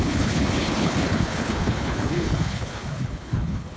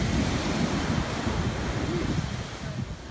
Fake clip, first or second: first